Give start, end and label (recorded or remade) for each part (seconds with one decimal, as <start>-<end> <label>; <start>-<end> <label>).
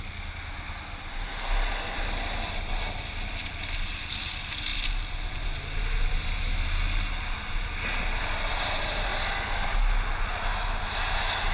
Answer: 0.0-11.5 recorded